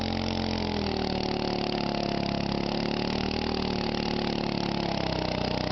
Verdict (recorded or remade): recorded